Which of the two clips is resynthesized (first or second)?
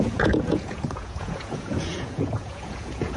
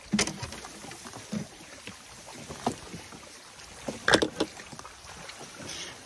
first